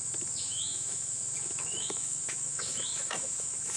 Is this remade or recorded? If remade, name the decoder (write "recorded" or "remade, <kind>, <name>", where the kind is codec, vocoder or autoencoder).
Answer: remade, autoencoder, DAC-VAE